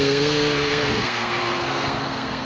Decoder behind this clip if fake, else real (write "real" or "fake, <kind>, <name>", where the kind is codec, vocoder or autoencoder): fake, codec, SNAC